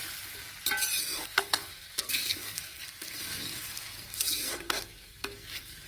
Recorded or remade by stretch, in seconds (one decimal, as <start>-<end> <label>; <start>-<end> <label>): 0.0-1.0 recorded; 1.0-5.9 remade